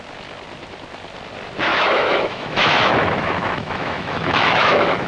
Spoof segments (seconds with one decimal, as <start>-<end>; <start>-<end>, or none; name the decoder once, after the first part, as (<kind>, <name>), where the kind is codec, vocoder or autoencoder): 1.7-5.1 (autoencoder, DAC-VAE)